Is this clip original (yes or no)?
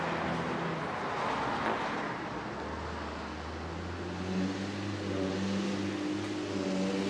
yes